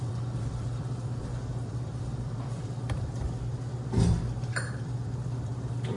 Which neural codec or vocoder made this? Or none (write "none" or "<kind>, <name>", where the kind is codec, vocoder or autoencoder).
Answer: vocoder, BigVGAN v2